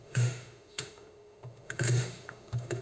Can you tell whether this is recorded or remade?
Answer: remade